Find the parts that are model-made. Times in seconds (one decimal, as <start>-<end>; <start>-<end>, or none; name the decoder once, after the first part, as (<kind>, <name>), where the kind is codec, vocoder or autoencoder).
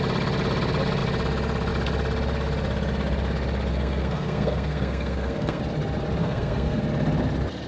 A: 3.7-5.6 (codec, SNAC); 6.2-6.8